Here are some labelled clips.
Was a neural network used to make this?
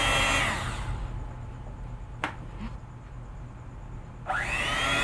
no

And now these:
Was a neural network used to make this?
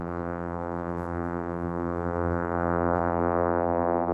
yes